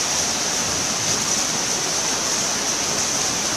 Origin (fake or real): real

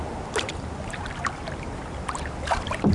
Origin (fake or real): fake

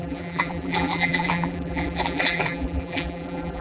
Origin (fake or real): fake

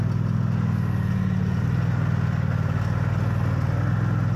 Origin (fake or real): real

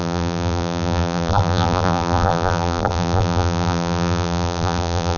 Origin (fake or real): fake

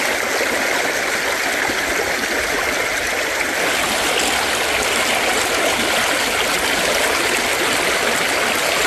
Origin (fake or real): real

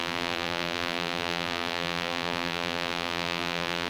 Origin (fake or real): fake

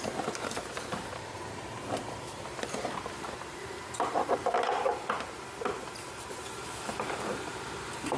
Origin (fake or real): fake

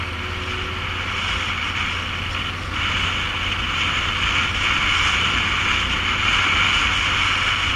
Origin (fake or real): real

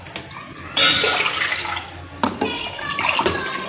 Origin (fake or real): real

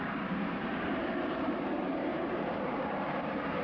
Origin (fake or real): fake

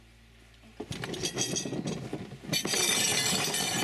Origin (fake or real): real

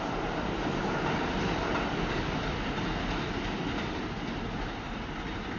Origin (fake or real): fake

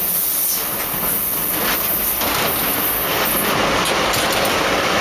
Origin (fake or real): real